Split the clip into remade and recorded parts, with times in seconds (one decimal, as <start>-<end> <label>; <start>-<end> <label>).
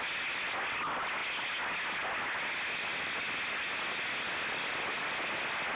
0.0-5.8 recorded